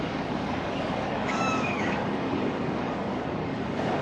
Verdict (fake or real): fake